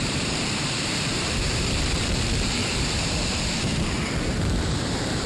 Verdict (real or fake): fake